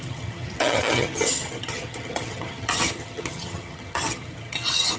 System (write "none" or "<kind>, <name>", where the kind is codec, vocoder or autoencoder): vocoder, HiFi-GAN